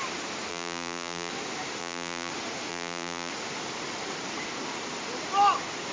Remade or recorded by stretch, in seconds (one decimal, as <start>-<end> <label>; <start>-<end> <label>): 0.0-0.5 recorded; 0.5-1.3 remade; 1.3-1.8 recorded; 1.8-2.3 remade; 2.3-2.7 recorded; 2.7-3.3 remade; 3.3-5.9 recorded